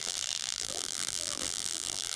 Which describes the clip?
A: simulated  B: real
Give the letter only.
A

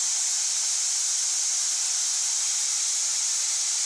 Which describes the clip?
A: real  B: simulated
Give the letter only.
A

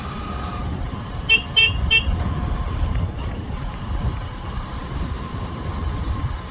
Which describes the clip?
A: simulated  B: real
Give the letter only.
A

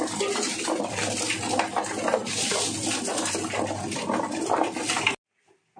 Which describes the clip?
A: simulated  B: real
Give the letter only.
B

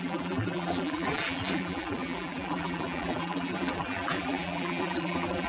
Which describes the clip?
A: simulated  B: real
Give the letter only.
A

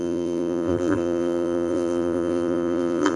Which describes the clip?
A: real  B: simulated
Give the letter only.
B